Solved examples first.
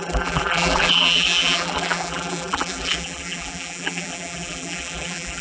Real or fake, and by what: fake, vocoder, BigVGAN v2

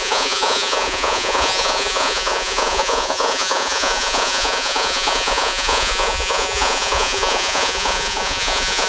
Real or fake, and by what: fake, vocoder, Vocos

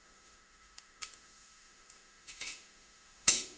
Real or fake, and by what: fake, autoencoder, DAC-VAE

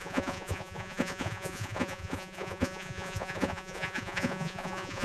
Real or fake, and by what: fake, vocoder, Vocos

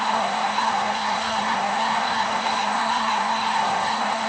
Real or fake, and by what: fake, codec, SNAC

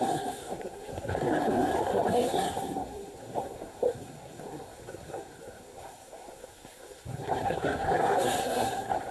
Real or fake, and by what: fake, codec, SNAC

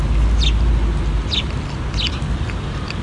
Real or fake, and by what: real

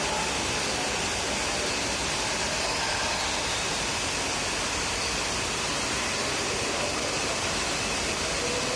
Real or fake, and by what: fake, vocoder, BigVGAN v2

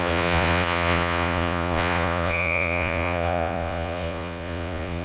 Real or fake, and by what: fake, vocoder, Vocos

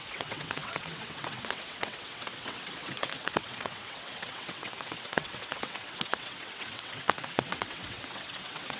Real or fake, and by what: fake, vocoder, WaveNeXt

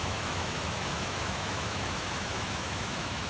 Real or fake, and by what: fake, autoencoder, DAC-VAE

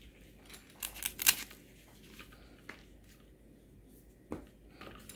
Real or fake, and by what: real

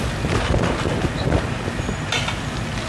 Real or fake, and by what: real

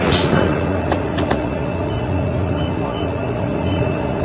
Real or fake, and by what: fake, vocoder, Vocos